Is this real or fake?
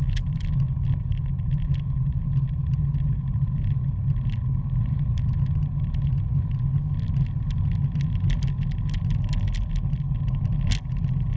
real